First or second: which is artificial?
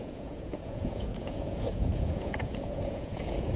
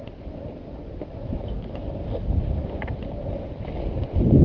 first